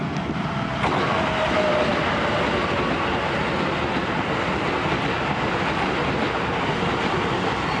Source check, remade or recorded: recorded